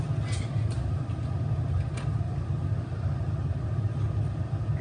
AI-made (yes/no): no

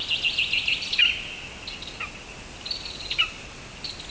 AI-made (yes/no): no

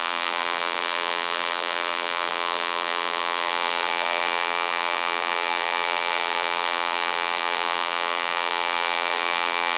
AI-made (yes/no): yes